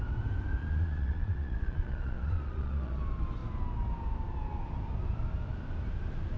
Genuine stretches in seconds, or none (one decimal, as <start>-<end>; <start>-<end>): 0.0-0.6; 3.0-6.4